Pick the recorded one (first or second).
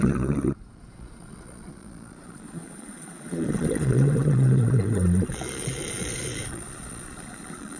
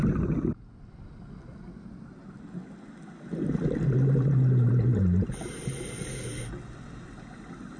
second